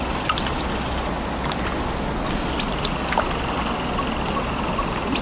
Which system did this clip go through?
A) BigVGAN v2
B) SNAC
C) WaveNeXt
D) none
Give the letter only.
D